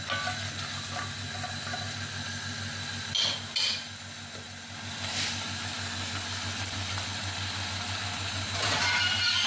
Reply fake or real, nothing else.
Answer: real